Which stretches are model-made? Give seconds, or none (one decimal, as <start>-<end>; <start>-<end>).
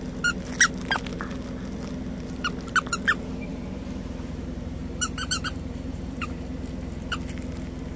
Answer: 3.5-6.3